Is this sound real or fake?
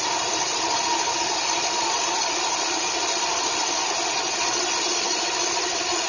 real